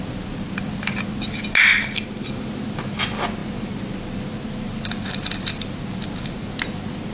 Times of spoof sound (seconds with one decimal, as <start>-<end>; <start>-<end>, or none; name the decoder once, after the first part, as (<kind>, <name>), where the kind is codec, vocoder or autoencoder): none